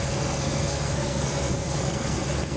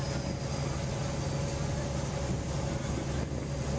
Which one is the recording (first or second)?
second